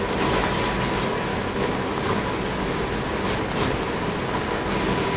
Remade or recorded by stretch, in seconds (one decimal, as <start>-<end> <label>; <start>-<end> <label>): 0.0-1.3 recorded; 1.3-2.3 remade; 2.3-5.2 recorded